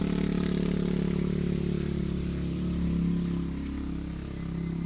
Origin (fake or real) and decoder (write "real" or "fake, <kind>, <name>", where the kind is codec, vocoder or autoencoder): real